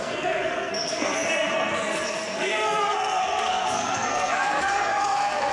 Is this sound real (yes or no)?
no